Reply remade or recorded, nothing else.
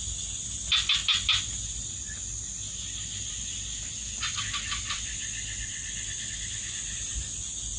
recorded